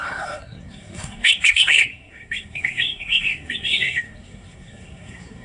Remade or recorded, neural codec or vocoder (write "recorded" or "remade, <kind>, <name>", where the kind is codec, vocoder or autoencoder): remade, codec, SNAC